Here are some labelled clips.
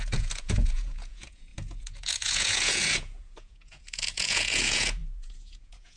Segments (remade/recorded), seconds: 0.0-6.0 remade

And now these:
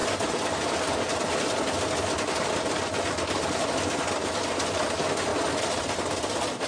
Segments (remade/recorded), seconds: 0.0-5.3 recorded; 5.3-6.0 remade; 6.0-6.7 recorded

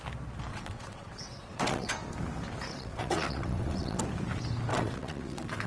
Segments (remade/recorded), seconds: 0.0-0.5 recorded; 0.5-1.9 remade; 1.9-2.7 recorded; 2.7-4.0 remade; 4.0-4.7 recorded; 4.7-5.7 remade

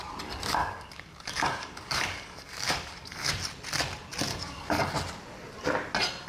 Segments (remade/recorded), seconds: 0.0-0.6 recorded; 0.6-3.3 remade; 3.3-4.3 recorded; 4.3-4.8 remade; 4.8-6.3 recorded

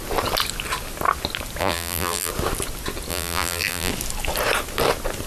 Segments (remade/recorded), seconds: 0.0-1.6 recorded; 1.6-2.3 remade; 2.3-3.1 recorded; 3.1-3.9 remade; 3.9-5.3 recorded